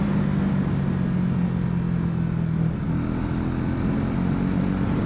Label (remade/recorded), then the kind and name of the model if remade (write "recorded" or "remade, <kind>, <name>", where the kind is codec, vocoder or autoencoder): recorded